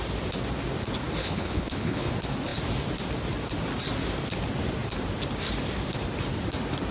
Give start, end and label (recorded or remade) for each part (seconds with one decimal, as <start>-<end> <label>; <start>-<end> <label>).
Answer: 0.0-1.2 recorded; 1.2-2.1 remade; 2.1-6.9 recorded